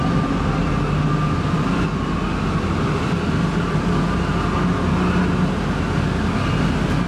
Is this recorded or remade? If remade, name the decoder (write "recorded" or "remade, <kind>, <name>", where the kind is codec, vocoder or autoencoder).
recorded